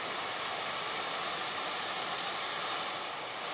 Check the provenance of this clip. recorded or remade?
recorded